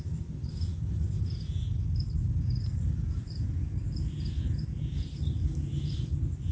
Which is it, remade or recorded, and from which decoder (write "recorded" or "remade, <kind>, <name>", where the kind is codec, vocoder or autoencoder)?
recorded